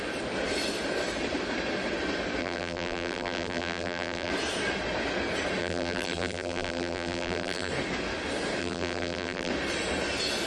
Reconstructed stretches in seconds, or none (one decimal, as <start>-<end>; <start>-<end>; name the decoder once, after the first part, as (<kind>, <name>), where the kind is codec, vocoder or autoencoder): 2.4-4.3 (vocoder, BigVGAN v2); 5.6-7.7; 8.6-9.5